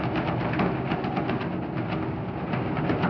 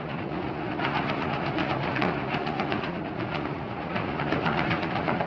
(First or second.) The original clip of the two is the first